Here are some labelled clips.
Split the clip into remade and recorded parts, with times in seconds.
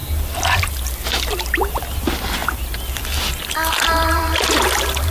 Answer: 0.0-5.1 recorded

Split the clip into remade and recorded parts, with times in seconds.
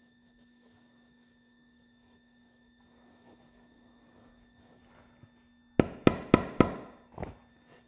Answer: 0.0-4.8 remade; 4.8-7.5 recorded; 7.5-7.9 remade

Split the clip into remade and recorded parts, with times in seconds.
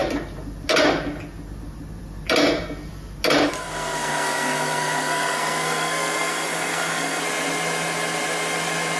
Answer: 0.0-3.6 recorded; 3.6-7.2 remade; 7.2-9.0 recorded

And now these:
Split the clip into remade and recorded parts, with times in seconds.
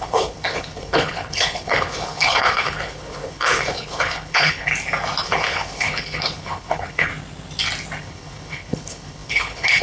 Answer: 0.0-4.7 remade; 4.7-5.2 recorded; 5.2-7.1 remade; 7.1-8.0 recorded; 8.0-9.8 remade